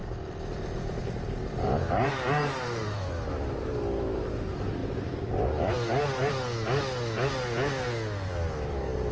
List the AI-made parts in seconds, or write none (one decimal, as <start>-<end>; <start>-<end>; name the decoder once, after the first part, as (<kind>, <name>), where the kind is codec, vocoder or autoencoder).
1.4-3.1 (vocoder, BigVGAN v2)